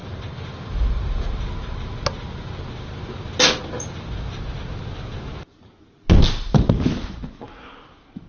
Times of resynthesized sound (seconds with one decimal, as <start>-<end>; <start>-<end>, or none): none